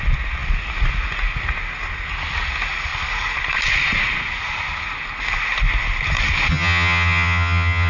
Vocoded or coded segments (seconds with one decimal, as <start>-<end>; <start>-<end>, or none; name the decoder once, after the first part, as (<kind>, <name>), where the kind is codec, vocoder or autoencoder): 6.5-7.9 (vocoder, HiFi-GAN)